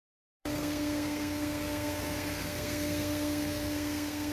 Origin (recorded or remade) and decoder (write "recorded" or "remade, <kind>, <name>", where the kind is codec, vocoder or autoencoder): remade, codec, SNAC